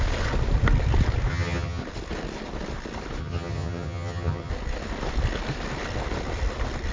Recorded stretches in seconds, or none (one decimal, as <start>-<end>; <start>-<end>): 0.0-1.3; 1.8-3.2; 4.5-6.9